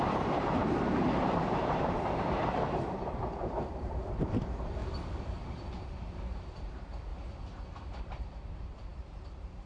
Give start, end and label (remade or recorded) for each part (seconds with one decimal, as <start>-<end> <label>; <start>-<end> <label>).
0.0-4.8 remade; 4.8-5.3 recorded; 5.3-7.1 remade; 7.1-8.0 recorded; 8.0-9.7 remade